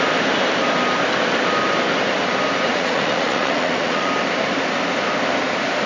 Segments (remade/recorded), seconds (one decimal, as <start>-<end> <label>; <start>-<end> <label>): 0.0-2.7 recorded; 2.7-4.1 remade; 4.1-5.9 recorded